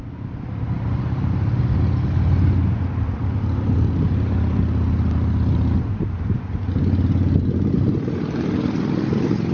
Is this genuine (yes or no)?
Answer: yes